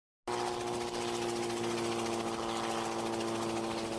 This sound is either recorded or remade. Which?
recorded